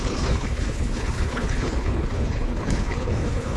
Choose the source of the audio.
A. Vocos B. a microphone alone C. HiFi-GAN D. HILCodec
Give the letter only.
D